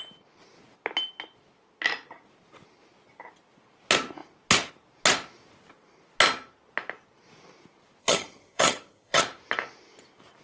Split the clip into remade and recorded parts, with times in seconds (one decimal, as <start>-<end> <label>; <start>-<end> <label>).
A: 0.0-8.0 recorded; 8.0-9.2 remade; 9.2-10.4 recorded